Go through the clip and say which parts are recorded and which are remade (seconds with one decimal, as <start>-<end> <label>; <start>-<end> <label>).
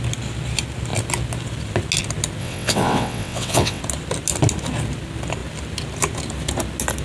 0.0-2.4 recorded; 2.4-3.8 remade; 3.8-7.0 recorded